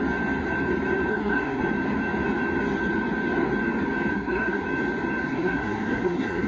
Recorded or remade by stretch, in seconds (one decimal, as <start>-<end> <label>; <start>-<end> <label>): 0.0-1.1 recorded; 1.1-1.6 remade; 1.6-4.1 recorded; 4.1-4.6 remade; 4.6-5.3 recorded; 5.3-6.5 remade